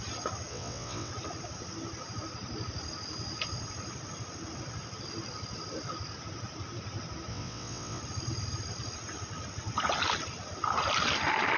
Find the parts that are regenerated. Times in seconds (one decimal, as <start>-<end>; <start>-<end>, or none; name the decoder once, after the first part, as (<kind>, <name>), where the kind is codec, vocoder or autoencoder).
0.5-1.1 (vocoder, WaveNeXt); 7.3-8.0